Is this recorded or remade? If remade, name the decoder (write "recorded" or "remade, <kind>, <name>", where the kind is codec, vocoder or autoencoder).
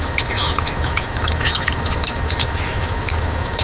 remade, autoencoder, DAC-VAE